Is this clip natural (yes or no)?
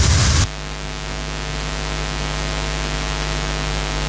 yes